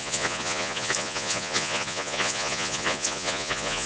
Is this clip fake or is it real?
fake